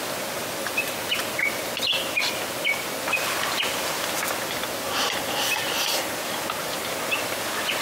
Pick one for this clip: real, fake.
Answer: real